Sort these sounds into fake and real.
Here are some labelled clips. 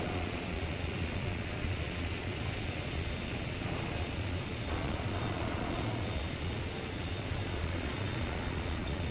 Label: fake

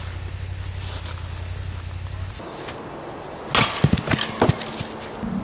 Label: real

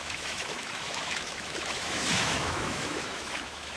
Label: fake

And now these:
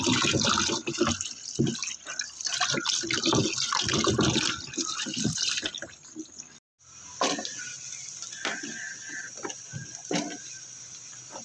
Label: real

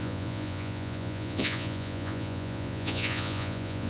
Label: fake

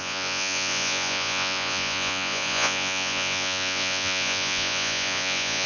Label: fake